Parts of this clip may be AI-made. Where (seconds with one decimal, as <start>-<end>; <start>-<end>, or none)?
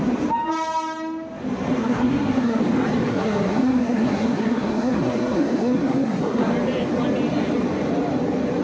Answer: 1.8-2.6; 3.1-6.5